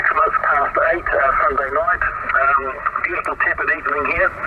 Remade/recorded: recorded